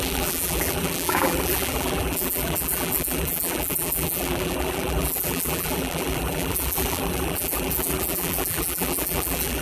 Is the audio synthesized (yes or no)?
yes